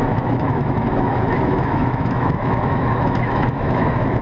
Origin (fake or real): fake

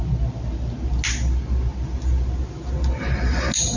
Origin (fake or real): real